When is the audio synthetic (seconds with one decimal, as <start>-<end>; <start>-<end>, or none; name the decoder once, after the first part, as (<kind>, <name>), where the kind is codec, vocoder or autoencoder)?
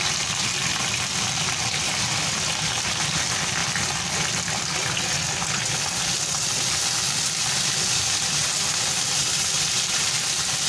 0.0-3.6 (vocoder, BigVGAN v2); 7.4-10.7